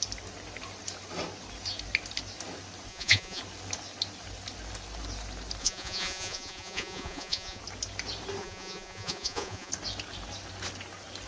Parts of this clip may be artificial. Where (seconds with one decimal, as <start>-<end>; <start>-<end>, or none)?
2.9-3.4; 5.6-7.6; 8.4-9.7